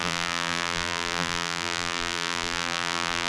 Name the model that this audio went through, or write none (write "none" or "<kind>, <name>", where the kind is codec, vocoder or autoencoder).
vocoder, BigVGAN v2